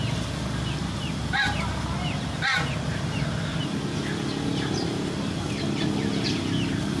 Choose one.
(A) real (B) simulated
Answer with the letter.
A